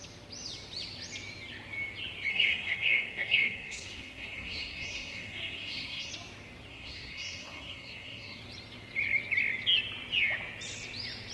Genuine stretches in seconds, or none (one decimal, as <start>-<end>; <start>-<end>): 0.0-2.3; 6.1-6.7; 8.4-11.3